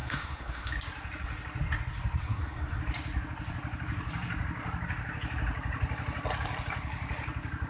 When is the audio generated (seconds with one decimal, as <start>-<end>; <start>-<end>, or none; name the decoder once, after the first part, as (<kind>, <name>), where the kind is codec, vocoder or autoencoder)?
0.0-0.7 (codec, SNAC); 2.2-2.8